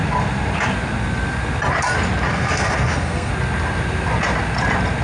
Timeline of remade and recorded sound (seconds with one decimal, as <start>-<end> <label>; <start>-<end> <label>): 0.0-2.3 recorded; 2.3-3.3 remade; 3.3-5.0 recorded